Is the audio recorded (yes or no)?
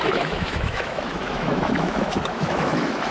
no